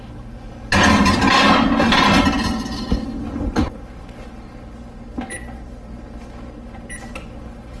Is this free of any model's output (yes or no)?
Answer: yes